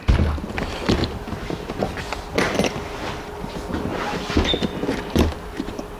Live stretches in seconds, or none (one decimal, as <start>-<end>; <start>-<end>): 1.0-3.4; 3.9-4.9